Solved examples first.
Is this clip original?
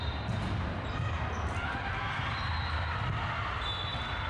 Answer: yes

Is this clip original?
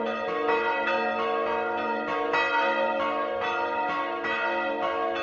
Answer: yes